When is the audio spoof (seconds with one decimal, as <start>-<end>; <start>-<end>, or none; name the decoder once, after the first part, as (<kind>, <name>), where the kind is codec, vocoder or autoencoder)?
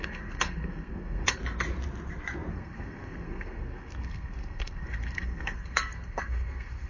0.0-1.4 (codec, SNAC); 2.5-6.9